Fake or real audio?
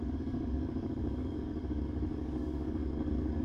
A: fake